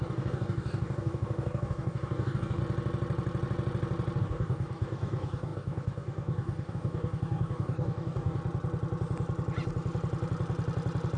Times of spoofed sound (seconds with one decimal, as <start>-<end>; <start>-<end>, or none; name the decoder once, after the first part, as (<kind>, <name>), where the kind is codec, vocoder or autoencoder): 0.0-2.6 (codec, DAC); 4.2-8.4